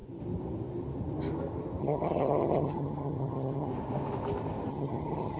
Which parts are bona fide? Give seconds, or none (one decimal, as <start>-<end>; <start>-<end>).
0.0-1.8; 3.7-4.7